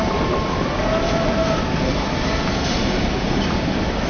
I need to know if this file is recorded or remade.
recorded